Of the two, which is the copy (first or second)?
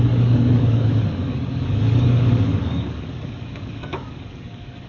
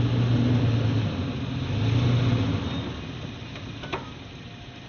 first